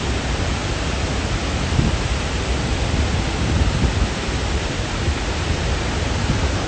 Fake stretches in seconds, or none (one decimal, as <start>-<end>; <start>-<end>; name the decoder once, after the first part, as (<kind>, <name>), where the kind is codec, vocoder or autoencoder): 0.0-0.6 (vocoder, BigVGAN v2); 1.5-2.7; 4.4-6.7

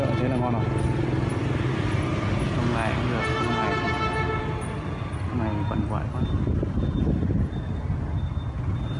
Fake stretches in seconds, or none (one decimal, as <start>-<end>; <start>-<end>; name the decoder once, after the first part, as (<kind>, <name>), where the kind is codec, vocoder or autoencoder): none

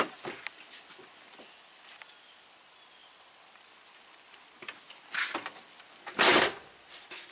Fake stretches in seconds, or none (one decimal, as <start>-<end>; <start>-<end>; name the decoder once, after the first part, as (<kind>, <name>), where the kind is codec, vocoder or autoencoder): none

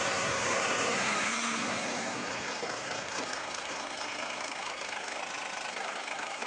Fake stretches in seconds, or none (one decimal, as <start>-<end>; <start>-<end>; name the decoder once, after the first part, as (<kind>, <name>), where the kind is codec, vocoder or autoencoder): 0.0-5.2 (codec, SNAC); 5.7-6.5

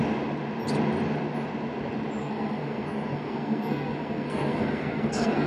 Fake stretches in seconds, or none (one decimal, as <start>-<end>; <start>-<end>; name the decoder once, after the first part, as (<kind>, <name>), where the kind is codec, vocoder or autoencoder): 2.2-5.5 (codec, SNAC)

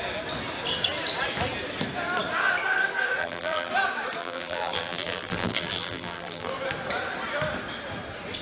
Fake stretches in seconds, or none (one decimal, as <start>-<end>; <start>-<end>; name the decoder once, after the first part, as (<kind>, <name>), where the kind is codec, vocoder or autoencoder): 3.2-3.7 (vocoder, BigVGAN v2); 4.2-6.5

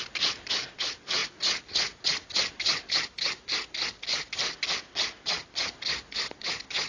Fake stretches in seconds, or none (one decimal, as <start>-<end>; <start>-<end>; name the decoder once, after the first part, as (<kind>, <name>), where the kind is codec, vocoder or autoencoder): none